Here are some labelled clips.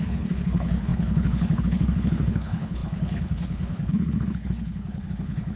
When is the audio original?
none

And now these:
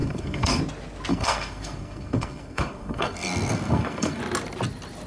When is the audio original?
0.6-1.1; 4.2-5.1

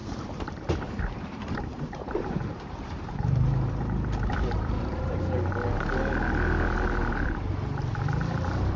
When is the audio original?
5.2-8.8

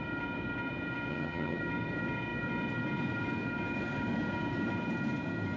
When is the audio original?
0.0-1.1; 1.6-5.6